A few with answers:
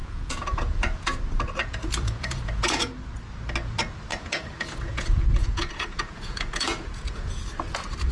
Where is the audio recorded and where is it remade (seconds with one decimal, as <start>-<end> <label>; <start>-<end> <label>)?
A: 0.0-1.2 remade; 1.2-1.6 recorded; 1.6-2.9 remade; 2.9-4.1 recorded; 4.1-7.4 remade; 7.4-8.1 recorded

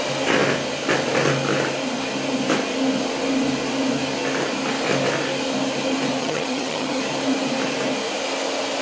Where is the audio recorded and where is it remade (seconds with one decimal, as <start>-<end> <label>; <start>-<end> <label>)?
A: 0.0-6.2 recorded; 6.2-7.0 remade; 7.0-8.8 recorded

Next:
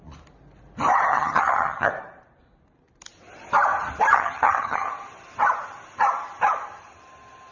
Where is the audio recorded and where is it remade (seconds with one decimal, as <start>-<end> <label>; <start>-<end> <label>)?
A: 0.0-1.1 recorded; 1.1-1.9 remade; 1.9-4.1 recorded; 4.1-4.9 remade; 4.9-7.5 recorded

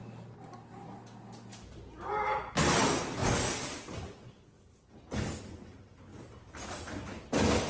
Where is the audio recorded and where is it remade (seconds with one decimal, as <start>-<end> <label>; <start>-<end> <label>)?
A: 0.0-1.5 recorded; 1.5-2.5 remade; 2.5-6.1 recorded; 6.1-7.2 remade; 7.2-7.7 recorded